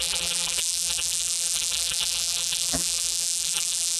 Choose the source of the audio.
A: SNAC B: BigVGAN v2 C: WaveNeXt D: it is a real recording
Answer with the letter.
B